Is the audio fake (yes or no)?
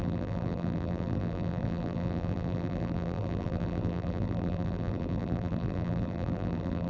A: yes